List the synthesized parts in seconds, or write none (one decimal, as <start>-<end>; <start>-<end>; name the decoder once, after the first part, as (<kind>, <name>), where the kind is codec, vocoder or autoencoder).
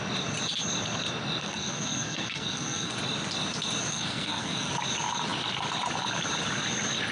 1.4-2.9 (codec, SNAC); 3.9-4.7